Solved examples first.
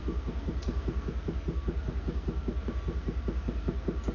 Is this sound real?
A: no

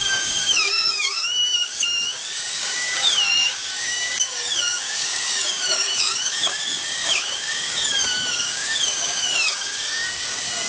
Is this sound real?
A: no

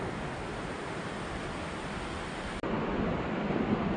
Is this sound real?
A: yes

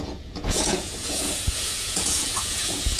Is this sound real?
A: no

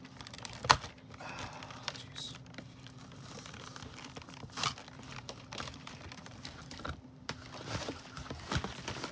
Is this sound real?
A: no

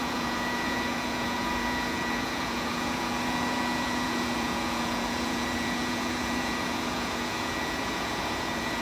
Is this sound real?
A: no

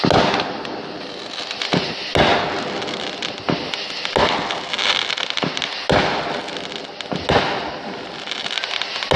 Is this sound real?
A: yes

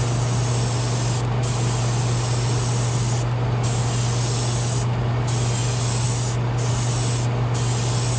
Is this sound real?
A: yes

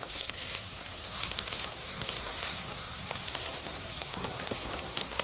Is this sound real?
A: no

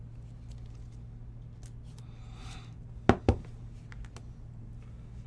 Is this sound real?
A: yes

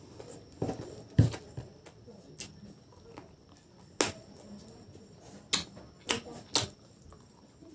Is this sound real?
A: yes